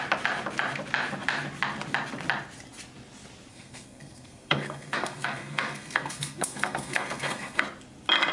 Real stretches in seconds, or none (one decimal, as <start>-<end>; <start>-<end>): 0.0-3.5; 7.6-8.3

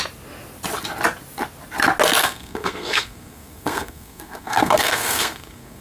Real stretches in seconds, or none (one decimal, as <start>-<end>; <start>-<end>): 0.0-2.2

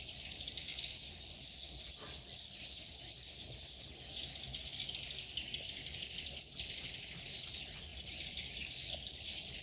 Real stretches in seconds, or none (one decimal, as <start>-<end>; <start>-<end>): 0.0-9.6

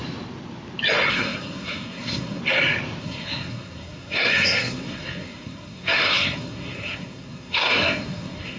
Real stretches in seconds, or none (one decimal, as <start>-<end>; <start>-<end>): 0.0-1.1; 2.4-3.0

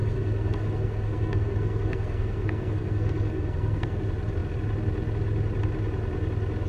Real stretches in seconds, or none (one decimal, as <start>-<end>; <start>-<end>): 4.0-6.7

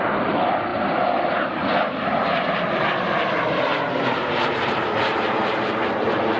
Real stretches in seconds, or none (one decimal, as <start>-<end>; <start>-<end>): 0.0-6.4

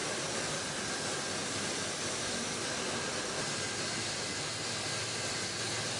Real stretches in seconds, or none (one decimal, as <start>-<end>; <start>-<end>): 0.0-6.0

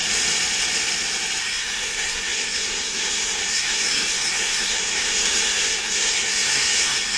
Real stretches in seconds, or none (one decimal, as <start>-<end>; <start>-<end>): 0.0-1.4